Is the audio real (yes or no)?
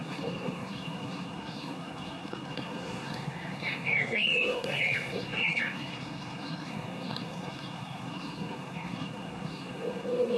no